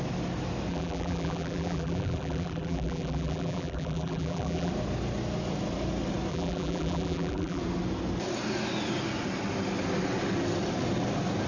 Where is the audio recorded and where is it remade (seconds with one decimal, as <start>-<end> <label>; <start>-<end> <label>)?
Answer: 0.0-0.7 recorded; 0.7-4.7 remade; 4.7-6.3 recorded; 6.3-7.6 remade; 7.6-11.5 recorded